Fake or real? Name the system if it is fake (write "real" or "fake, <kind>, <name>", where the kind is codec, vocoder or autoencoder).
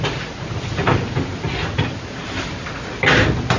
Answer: real